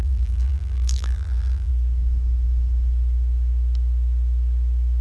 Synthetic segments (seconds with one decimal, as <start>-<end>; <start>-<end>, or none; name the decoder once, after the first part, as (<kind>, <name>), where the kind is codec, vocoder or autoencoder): 0.0-1.7 (vocoder, BigVGAN v2)